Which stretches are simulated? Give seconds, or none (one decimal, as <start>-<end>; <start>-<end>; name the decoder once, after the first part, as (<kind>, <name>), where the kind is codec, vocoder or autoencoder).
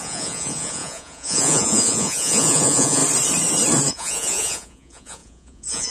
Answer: 0.0-3.0 (vocoder, Vocos); 3.9-5.9